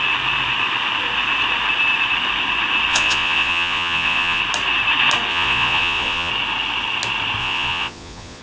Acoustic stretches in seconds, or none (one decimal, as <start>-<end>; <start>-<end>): 0.0-2.9; 4.4-5.3; 6.3-7.4